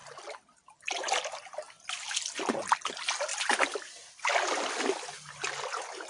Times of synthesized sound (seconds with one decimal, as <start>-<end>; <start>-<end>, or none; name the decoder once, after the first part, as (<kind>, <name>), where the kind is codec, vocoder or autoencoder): none